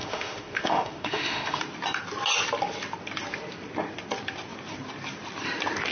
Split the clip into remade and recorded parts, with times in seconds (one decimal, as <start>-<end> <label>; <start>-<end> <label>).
0.0-1.6 remade; 1.6-5.9 recorded